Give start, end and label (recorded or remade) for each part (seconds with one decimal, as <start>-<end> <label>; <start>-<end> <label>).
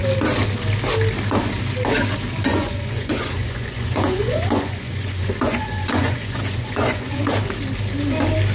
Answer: 0.0-2.5 recorded; 2.5-7.2 remade; 7.2-8.5 recorded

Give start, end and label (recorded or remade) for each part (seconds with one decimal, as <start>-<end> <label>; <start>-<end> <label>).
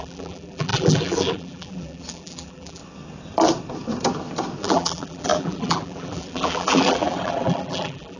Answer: 0.0-2.8 remade; 2.8-4.6 recorded; 4.6-8.2 remade